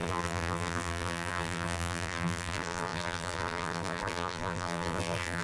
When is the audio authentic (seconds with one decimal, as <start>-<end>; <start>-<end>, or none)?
none